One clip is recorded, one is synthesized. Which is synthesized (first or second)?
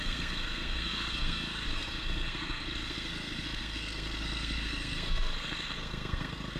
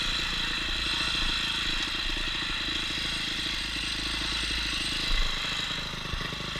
first